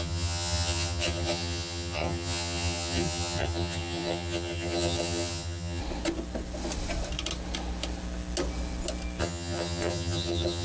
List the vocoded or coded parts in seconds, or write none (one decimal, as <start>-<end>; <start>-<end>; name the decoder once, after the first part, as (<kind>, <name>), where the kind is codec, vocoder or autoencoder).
0.0-5.8 (vocoder, HiFi-GAN); 9.2-10.6